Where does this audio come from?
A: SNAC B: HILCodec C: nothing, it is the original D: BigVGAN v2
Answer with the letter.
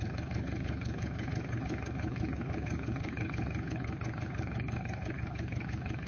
B